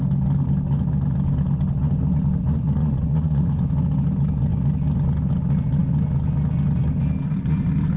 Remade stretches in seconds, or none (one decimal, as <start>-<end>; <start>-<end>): 2.8-3.6